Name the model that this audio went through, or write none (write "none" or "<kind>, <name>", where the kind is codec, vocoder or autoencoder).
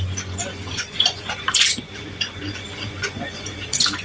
vocoder, Vocos